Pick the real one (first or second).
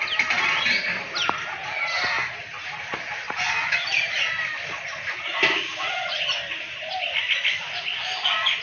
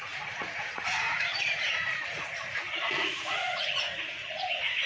first